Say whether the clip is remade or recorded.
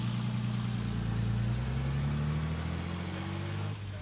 recorded